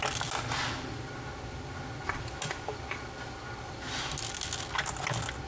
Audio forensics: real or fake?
real